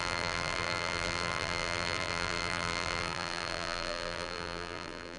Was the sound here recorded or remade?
remade